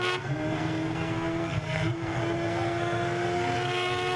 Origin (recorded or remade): remade